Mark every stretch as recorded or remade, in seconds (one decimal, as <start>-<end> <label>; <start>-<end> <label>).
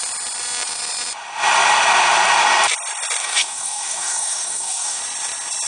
0.0-3.2 recorded; 3.2-5.0 remade; 5.0-5.7 recorded